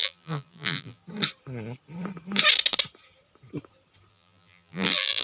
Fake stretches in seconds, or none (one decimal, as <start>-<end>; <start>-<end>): 0.0-1.0; 4.1-5.2